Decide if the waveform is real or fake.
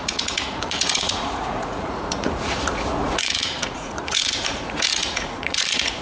fake